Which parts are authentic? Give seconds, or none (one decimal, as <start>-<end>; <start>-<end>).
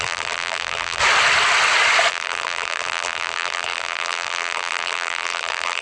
1.0-2.1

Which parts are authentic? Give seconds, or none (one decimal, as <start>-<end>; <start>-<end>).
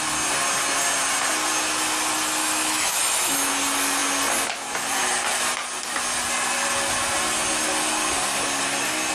0.0-2.4; 3.5-9.1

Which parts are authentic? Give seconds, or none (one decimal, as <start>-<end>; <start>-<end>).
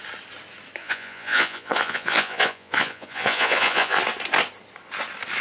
0.0-0.8; 4.0-5.4